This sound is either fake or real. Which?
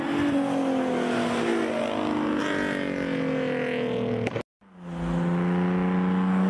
real